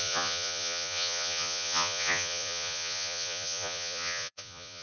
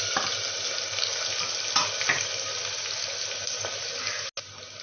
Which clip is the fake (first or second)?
first